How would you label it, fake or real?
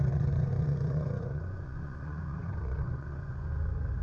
fake